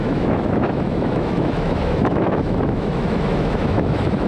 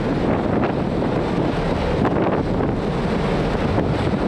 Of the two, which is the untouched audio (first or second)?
second